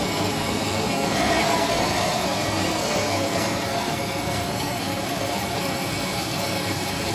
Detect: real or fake fake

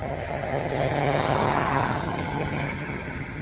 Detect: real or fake fake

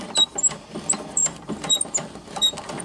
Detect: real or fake fake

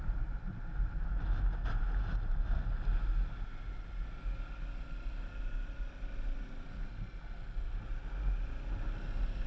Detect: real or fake real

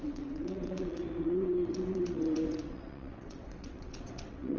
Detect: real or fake fake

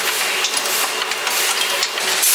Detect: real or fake real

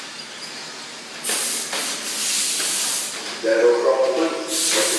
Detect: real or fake real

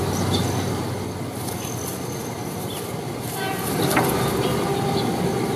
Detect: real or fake fake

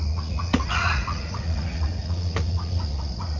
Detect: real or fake fake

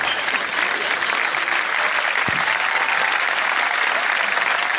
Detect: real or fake real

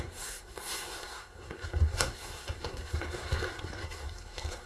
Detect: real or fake fake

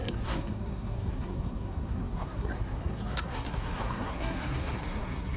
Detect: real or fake fake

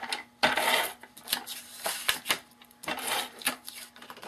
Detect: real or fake real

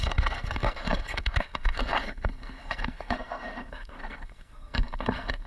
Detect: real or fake fake